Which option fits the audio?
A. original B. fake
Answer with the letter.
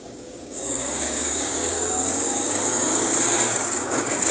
B